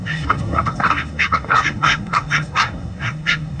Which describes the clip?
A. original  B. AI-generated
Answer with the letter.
B